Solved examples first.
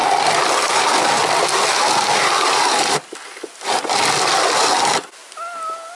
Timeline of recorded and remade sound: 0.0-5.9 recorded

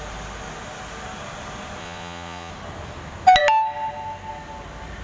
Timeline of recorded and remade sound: 0.0-1.8 recorded; 1.8-2.5 remade; 2.5-5.0 recorded

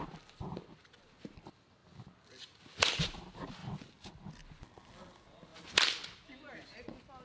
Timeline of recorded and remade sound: 0.0-7.2 recorded

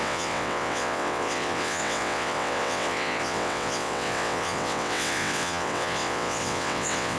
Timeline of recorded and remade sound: 0.0-7.2 remade

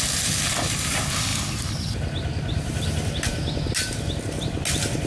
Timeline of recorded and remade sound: 0.0-5.1 recorded

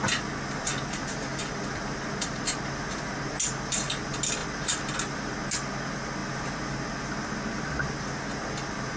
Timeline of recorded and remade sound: 0.0-9.0 recorded